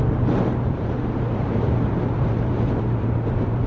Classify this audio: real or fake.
fake